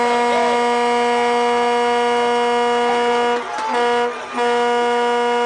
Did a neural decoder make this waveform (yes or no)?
no